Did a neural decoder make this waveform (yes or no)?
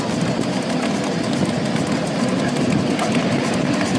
no